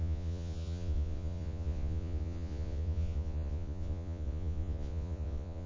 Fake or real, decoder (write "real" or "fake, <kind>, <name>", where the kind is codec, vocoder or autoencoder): fake, vocoder, Vocos